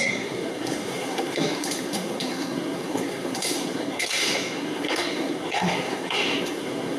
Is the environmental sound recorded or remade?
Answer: remade